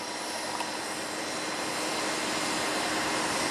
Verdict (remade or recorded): recorded